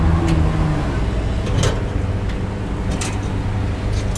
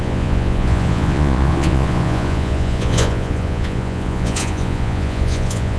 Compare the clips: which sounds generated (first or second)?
second